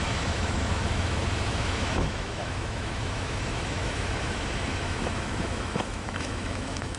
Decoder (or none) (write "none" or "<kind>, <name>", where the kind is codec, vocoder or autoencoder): autoencoder, DAC-VAE